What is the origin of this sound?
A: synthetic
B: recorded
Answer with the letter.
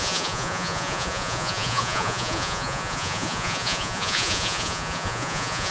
A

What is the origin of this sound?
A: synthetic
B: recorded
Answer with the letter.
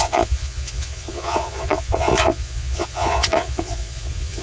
A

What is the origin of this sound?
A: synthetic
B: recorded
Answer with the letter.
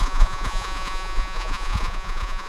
A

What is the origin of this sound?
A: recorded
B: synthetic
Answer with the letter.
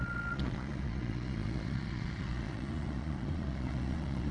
B